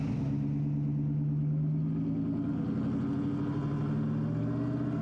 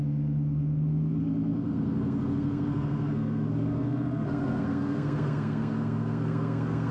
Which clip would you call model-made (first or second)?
second